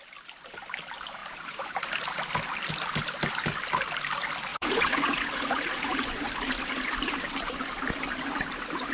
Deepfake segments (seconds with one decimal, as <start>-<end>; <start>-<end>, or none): 4.5-6.3